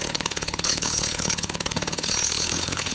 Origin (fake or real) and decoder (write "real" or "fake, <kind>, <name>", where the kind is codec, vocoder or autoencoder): fake, codec, HILCodec